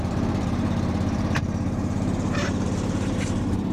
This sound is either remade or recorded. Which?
remade